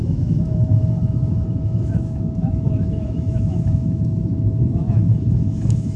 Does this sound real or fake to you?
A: fake